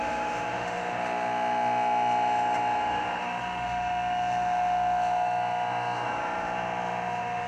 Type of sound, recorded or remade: remade